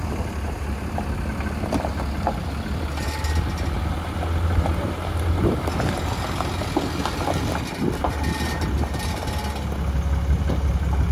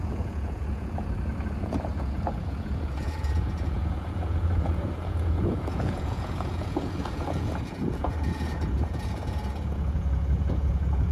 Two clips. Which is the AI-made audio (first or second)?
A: second